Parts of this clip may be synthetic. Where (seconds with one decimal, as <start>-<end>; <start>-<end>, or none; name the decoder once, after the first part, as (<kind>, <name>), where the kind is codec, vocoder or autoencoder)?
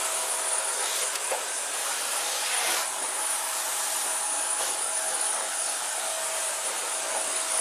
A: 0.0-3.6 (codec, DAC); 4.2-6.2; 7.0-7.6